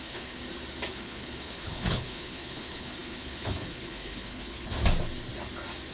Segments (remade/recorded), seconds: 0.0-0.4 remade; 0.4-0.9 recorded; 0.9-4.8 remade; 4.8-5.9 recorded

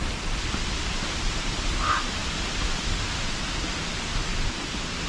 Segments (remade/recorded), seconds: 0.0-5.1 recorded

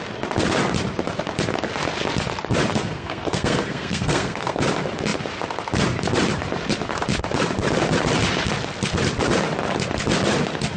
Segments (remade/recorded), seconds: 0.0-2.7 recorded; 2.7-4.6 remade; 4.6-10.8 recorded

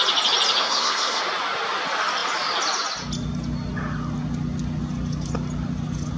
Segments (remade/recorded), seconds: 0.0-0.6 recorded; 0.6-1.2 remade; 1.2-6.2 recorded